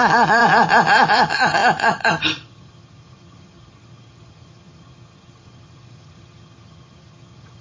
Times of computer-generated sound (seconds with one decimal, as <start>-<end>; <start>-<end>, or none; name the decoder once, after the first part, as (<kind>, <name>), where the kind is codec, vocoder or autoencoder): 0.0-0.4 (vocoder, HiFi-GAN); 1.1-7.6